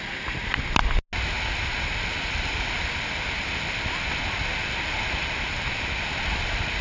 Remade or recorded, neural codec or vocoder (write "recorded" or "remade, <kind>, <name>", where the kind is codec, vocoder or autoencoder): recorded